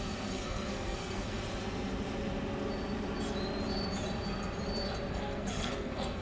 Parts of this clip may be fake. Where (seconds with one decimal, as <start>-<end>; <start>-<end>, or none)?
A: 0.0-1.4; 5.1-6.2

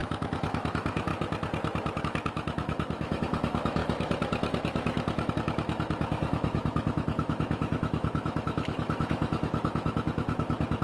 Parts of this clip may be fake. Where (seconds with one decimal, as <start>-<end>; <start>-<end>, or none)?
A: 0.0-1.1; 2.0-10.8

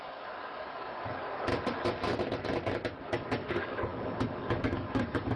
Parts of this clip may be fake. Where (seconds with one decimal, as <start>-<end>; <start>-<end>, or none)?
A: 0.0-1.5; 3.0-5.4

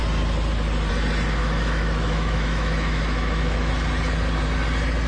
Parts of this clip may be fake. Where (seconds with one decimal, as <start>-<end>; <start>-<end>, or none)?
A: 1.4-3.7